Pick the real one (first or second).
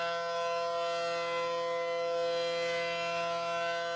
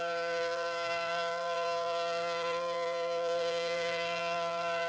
first